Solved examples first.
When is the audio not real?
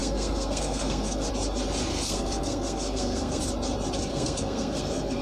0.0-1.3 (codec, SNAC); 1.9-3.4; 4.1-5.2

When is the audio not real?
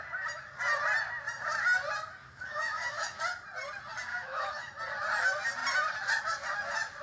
2.2-3.2 (autoencoder, DAC-VAE); 4.1-4.8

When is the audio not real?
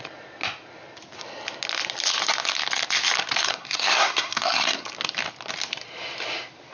3.4-4.9 (codec, SNAC)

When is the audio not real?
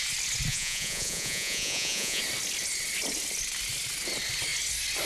0.5-2.2 (vocoder, Vocos)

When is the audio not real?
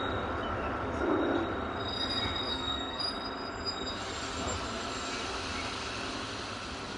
2.5-3.0 (codec, SNAC)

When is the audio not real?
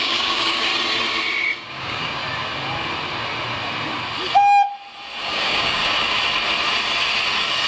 0.0-0.7 (codec, DAC); 1.7-2.2; 5.2-5.8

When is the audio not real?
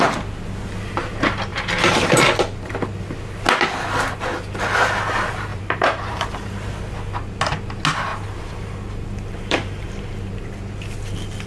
1.5-2.2 (vocoder, BigVGAN v2); 5.5-6.8; 8.1-10.4